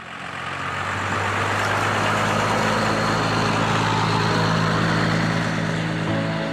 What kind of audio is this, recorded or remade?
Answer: recorded